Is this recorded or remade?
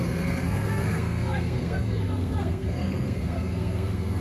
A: remade